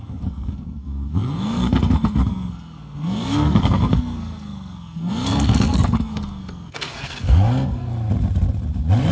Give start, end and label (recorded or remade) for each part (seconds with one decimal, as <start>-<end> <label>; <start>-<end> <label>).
0.0-7.9 remade; 7.9-9.1 recorded